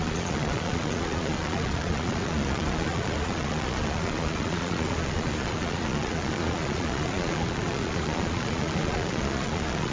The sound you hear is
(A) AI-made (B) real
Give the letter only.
A